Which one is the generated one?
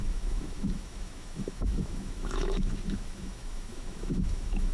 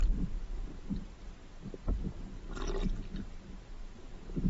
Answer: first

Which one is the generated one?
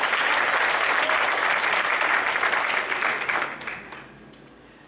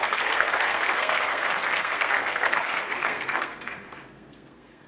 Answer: second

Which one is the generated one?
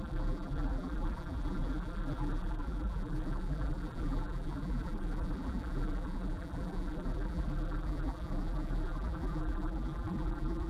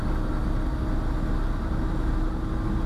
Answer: first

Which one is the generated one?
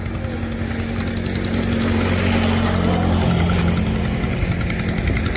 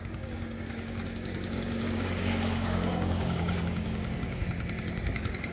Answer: second